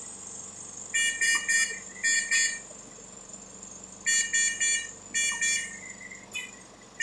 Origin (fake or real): real